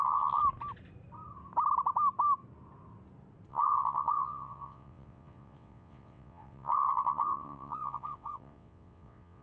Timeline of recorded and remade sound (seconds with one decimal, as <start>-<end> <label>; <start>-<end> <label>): 0.0-0.4 remade; 0.4-3.5 recorded; 3.5-9.4 remade

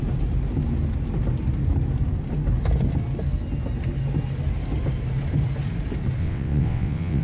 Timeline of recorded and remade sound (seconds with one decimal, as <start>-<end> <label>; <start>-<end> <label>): 0.0-6.2 recorded; 6.2-7.2 remade

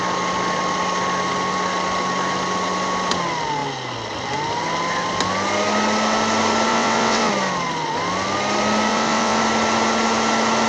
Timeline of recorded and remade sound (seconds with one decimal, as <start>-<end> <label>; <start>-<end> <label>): 0.0-6.7 recorded; 6.7-7.3 remade; 7.3-8.9 recorded; 8.9-9.4 remade; 9.4-10.7 recorded

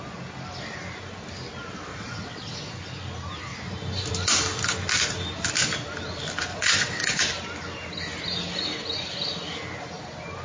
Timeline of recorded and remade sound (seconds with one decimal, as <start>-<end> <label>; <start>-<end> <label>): 0.0-1.9 recorded; 1.9-2.7 remade; 2.7-6.5 recorded; 6.5-7.2 remade; 7.2-10.4 recorded

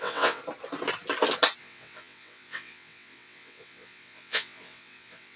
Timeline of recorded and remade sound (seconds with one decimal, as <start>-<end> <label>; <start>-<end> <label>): 0.0-0.4 remade; 0.4-1.6 recorded; 1.6-5.4 remade

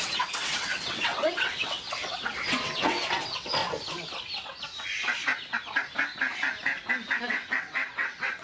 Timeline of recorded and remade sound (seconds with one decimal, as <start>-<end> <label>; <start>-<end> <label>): 0.0-3.6 remade; 3.6-7.2 recorded; 7.2-8.4 remade